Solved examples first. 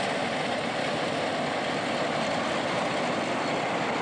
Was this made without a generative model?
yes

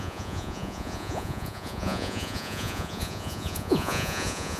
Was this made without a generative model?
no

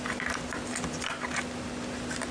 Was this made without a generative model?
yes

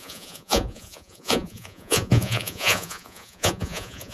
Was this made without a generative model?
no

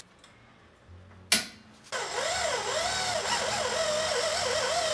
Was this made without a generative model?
yes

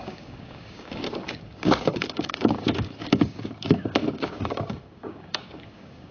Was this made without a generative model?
no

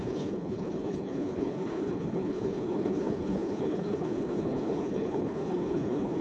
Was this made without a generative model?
no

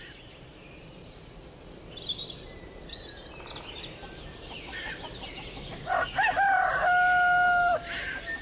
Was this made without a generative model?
yes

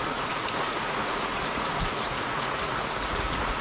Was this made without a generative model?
no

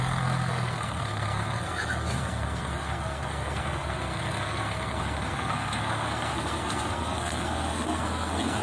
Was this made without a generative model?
no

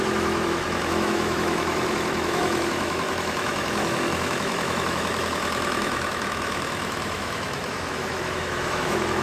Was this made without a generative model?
no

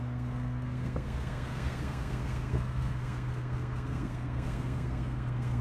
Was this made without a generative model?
no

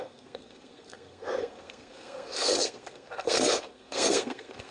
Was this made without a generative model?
no